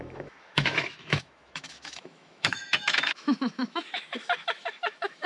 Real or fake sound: fake